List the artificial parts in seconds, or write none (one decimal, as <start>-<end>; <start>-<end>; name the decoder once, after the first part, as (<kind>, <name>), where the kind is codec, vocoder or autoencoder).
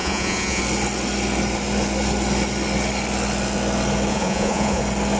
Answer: 0.0-0.6 (vocoder, Vocos); 4.1-4.8